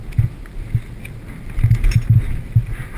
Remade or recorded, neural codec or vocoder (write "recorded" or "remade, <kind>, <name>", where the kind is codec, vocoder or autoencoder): recorded